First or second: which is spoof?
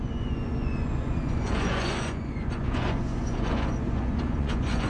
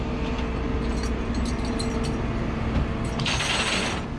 first